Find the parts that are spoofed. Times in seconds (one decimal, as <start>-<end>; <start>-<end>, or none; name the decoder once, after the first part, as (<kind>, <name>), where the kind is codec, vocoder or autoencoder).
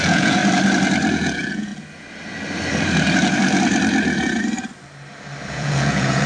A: 0.0-0.4 (vocoder, Vocos); 1.1-1.7; 5.5-6.3